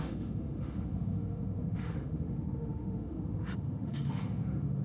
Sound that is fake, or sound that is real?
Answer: fake